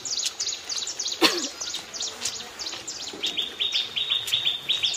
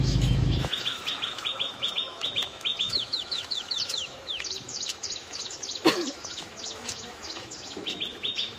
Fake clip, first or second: second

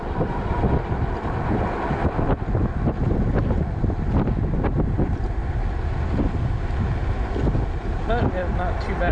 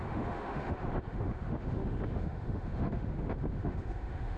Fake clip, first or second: second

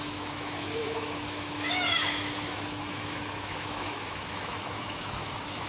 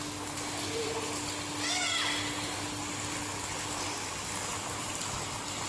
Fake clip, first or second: first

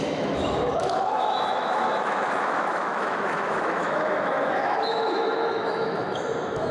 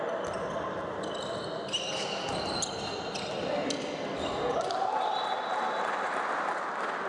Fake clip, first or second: first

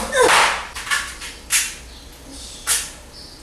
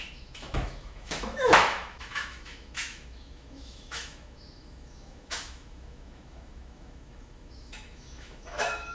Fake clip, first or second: second